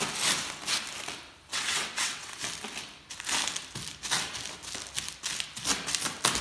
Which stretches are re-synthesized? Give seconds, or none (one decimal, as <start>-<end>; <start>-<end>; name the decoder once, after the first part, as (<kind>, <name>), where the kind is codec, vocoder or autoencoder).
1.5-2.4 (vocoder, WaveNeXt)